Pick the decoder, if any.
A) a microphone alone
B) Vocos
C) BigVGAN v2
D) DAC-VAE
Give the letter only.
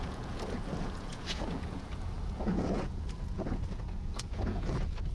B